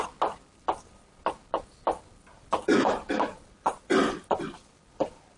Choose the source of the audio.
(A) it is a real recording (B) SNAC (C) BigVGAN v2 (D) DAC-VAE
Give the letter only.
A